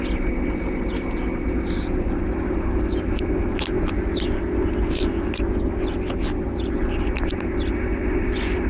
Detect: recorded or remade recorded